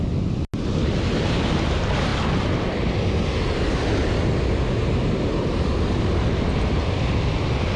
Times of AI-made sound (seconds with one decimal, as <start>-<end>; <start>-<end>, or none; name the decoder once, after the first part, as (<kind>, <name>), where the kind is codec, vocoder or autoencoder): none

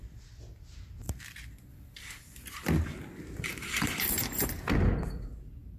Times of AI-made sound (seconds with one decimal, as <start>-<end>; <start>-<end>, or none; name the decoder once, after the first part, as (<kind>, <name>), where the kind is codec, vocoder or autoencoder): 1.7-2.7 (vocoder, BigVGAN v2); 3.5-4.4